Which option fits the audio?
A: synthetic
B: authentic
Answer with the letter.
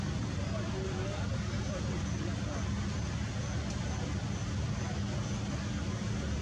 B